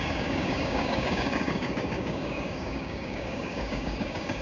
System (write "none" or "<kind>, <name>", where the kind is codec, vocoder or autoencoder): codec, DAC